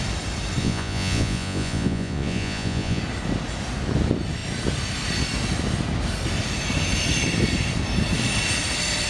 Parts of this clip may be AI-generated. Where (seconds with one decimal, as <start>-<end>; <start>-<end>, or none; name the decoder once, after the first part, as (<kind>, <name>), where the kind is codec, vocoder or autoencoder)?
0.6-3.0 (vocoder, Vocos)

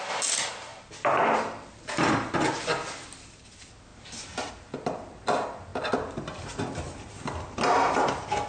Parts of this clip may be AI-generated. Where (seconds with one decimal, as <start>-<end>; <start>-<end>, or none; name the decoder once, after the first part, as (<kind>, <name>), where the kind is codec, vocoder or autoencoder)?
none

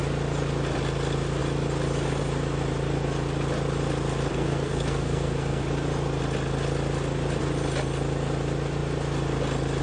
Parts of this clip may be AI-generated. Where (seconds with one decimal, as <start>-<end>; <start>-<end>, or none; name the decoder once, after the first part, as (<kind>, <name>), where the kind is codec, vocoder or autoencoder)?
4.3-5.6 (codec, SNAC)

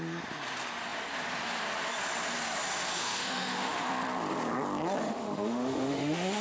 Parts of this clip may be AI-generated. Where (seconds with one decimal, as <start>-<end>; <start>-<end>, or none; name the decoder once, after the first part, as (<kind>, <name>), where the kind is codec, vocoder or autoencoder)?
3.0-3.9 (autoencoder, DAC-VAE); 5.0-6.4

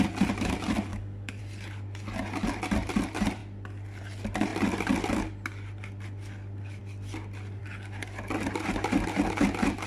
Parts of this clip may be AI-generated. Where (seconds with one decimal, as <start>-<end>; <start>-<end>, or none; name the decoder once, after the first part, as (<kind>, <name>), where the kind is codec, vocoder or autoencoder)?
0.9-1.4 (codec, DAC)

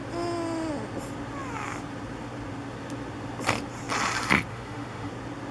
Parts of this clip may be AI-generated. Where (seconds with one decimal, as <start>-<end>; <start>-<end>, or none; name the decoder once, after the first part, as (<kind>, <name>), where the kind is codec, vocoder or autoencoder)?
4.5-5.1 (autoencoder, DAC-VAE)